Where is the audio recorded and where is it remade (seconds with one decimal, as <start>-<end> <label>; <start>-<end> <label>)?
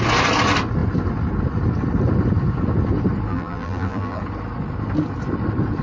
0.0-3.3 recorded; 3.3-4.2 remade; 4.2-5.8 recorded